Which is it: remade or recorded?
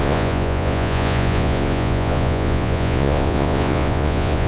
remade